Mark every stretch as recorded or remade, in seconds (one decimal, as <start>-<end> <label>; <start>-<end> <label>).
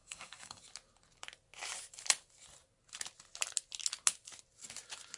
0.0-0.6 remade; 0.6-5.2 recorded